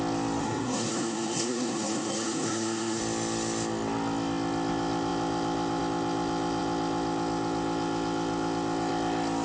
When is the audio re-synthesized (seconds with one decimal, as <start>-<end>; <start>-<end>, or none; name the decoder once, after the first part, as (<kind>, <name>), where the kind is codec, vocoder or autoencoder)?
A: 0.4-3.0 (codec, SNAC)